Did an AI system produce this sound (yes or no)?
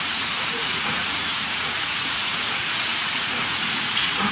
yes